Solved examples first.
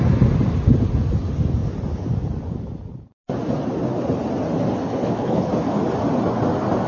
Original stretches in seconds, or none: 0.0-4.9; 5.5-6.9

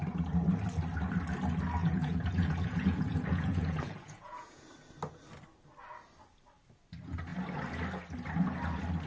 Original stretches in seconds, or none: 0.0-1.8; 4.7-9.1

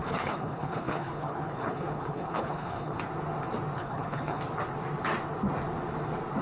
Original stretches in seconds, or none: 3.1-3.8; 4.4-6.4

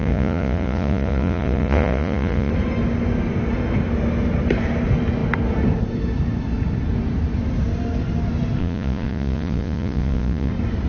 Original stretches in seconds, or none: 2.5-8.6; 10.5-10.9